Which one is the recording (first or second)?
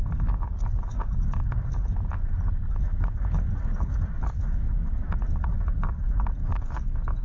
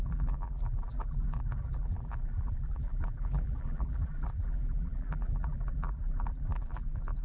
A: first